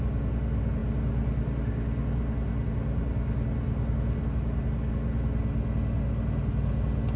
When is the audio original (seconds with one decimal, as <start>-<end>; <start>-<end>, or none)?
0.0-7.2